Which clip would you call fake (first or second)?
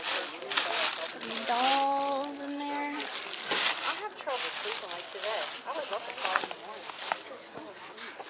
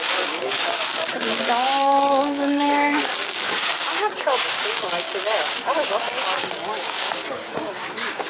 second